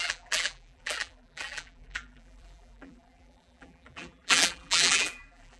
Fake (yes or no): yes